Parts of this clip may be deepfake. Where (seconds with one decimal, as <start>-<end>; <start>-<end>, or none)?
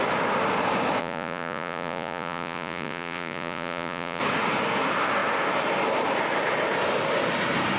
1.0-4.2